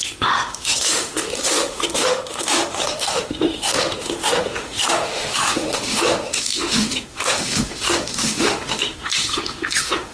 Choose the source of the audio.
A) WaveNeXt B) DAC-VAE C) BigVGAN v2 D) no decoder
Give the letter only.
B